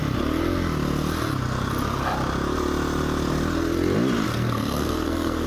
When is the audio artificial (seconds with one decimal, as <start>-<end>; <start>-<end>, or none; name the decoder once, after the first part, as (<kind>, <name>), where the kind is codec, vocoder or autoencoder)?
4.3-5.5 (codec, SNAC)